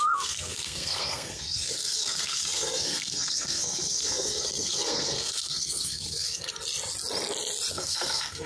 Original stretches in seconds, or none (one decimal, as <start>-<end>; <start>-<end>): 6.5-7.7